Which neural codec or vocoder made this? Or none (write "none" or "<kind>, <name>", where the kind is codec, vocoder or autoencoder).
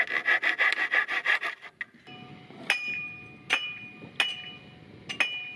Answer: none